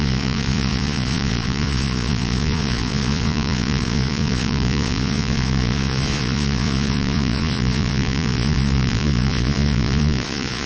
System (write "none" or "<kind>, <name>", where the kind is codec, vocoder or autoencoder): vocoder, Vocos